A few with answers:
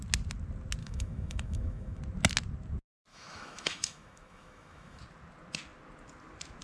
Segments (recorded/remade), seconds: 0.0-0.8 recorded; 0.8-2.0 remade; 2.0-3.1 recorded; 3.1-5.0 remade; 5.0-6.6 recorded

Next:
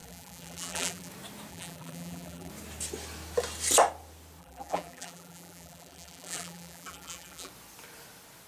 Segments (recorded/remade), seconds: 0.0-1.1 remade; 1.1-1.5 recorded; 1.5-2.5 remade; 2.5-4.4 recorded; 4.4-7.5 remade; 7.5-8.5 recorded